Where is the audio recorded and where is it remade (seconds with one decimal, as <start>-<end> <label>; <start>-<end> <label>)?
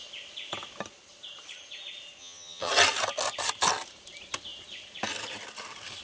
0.0-2.2 recorded; 2.2-2.7 remade; 2.7-6.0 recorded